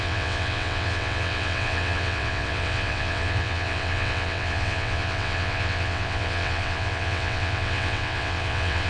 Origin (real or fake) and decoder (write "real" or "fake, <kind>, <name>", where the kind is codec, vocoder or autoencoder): fake, vocoder, WaveNeXt